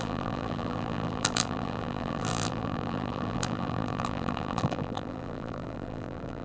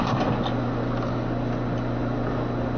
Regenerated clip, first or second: first